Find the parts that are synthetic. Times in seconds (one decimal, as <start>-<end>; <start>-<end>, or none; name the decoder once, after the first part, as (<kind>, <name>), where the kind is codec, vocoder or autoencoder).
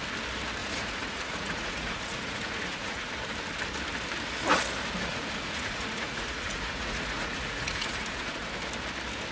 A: 0.6-3.1 (vocoder, Vocos); 5.1-8.4